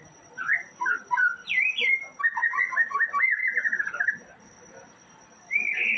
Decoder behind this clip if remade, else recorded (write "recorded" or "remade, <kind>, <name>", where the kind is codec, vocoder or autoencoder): remade, vocoder, BigVGAN v2